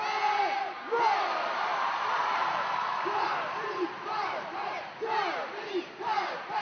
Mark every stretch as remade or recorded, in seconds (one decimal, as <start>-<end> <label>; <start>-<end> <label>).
0.0-1.7 recorded; 1.7-4.8 remade; 4.8-6.6 recorded